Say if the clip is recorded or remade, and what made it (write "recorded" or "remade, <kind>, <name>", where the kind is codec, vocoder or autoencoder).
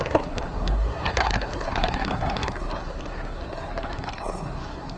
remade, codec, SNAC